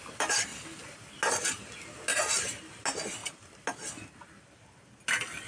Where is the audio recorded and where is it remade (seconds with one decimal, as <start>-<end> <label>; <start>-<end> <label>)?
0.0-2.1 recorded; 2.1-2.7 remade; 2.7-5.5 recorded